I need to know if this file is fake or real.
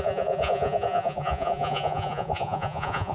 fake